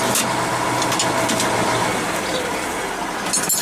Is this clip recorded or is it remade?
recorded